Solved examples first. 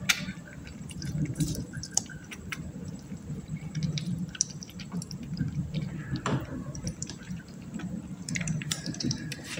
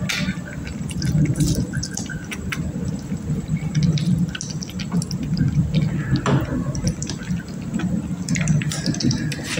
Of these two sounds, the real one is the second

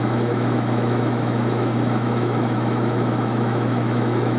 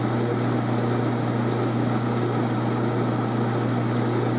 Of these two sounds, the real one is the second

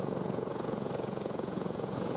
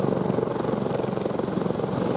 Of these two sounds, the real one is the second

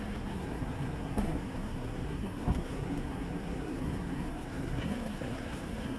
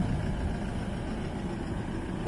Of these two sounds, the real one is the second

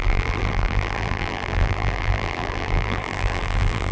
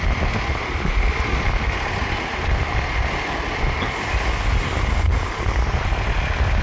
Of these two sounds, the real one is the second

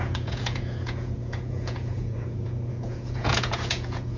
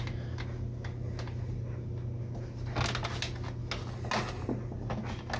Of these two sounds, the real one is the second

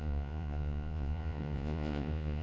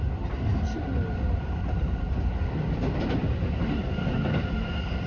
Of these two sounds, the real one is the second